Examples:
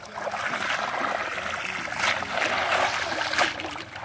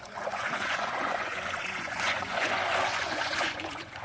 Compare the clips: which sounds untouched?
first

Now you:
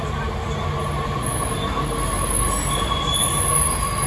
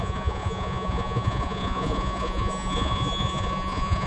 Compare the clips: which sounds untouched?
first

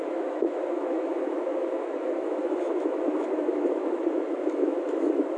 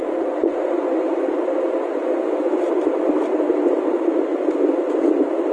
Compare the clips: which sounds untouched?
second